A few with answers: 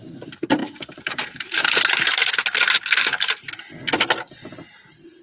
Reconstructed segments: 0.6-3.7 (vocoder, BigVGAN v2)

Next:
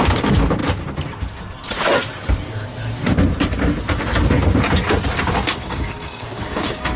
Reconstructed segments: 5.6-7.0 (codec, DAC)

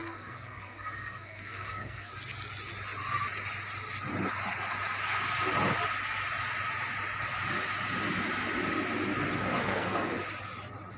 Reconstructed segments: 0.0-2.1 (codec, SNAC); 9.5-10.1

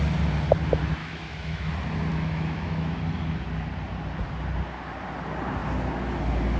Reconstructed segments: 1.0-1.7 (autoencoder, DAC-VAE); 2.1-3.0

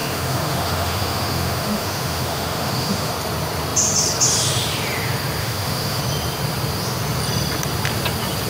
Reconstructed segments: 0.0-3.1 (autoencoder, DAC-VAE); 5.4-6.0

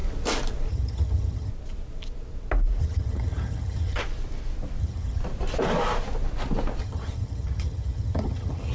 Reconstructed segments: 0.7-1.5 (vocoder, HiFi-GAN); 2.8-4.0; 4.8-5.2; 6.8-8.7